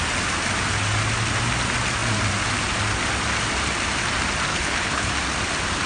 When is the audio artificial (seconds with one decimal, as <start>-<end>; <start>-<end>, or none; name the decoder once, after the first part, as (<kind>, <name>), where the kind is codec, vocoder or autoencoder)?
4.5-5.1 (codec, HILCodec)